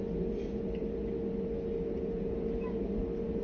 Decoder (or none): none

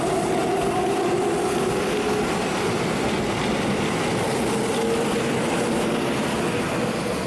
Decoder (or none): none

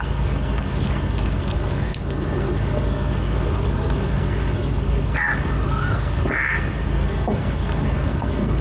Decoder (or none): codec, SNAC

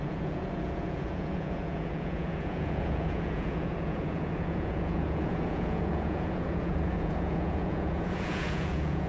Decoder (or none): vocoder, Vocos